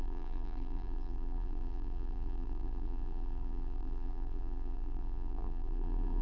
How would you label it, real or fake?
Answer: fake